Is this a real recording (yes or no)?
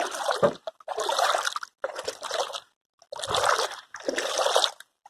yes